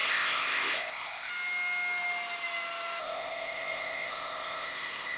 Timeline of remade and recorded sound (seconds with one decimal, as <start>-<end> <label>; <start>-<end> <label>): 0.0-1.3 remade; 1.3-3.0 recorded; 3.0-5.2 remade

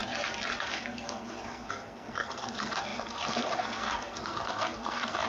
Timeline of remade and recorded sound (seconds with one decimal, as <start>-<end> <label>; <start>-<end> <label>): 0.0-0.6 recorded; 0.6-5.3 remade